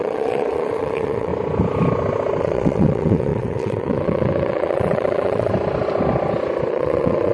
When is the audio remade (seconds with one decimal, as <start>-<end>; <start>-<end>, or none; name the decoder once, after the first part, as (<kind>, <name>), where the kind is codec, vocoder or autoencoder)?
0.0-1.3 (vocoder, WaveNeXt); 2.4-5.5; 6.7-7.3